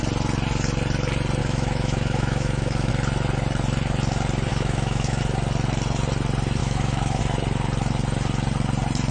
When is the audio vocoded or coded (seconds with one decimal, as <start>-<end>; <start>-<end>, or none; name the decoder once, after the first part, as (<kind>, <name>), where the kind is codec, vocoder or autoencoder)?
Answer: 1.4-2.9 (autoencoder, DAC-VAE); 4.5-5.2; 6.6-7.2

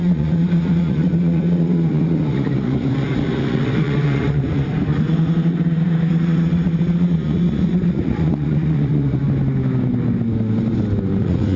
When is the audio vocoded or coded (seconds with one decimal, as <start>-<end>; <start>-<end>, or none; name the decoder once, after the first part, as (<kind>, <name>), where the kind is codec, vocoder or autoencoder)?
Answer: 0.0-9.2 (vocoder, Vocos); 11.2-11.6

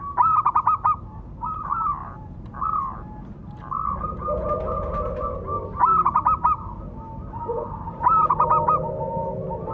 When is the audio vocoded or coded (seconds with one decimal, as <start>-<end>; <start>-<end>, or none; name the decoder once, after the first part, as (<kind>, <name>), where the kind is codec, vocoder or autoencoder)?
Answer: 2.0-2.8 (vocoder, BigVGAN v2); 3.4-4.6